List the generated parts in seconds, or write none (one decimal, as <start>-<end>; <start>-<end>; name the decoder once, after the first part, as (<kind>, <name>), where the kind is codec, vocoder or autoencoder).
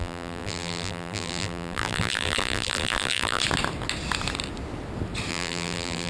0.0-3.4 (vocoder, BigVGAN v2); 5.3-6.1